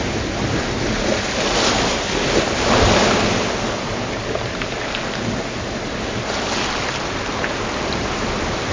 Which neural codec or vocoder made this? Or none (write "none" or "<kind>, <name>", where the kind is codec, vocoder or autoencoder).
none